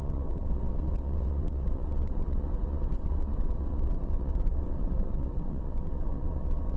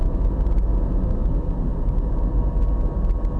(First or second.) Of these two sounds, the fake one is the first